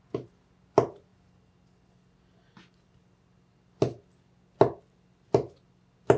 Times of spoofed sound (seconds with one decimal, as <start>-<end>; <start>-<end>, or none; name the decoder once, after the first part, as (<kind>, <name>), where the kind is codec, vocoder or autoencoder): none